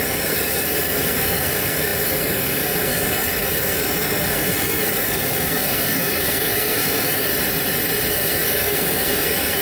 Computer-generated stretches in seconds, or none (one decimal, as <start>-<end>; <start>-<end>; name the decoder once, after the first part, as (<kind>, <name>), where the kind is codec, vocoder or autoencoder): 0.0-7.3 (codec, SNAC); 8.1-9.6